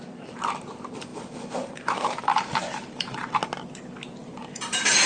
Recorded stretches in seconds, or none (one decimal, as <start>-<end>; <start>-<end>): 0.0-1.1; 3.3-4.2